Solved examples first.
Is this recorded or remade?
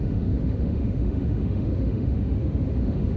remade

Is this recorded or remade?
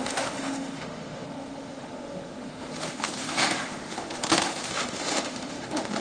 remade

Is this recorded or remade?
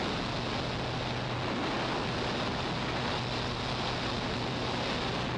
recorded